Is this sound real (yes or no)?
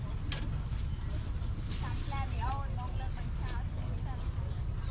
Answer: yes